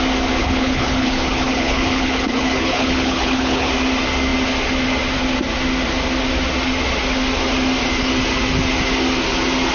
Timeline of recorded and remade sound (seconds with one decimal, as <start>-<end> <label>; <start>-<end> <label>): 0.0-0.4 recorded; 0.4-3.7 remade; 3.7-9.7 recorded